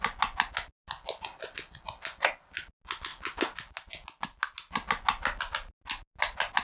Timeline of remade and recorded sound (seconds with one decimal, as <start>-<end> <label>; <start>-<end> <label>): 0.0-6.6 recorded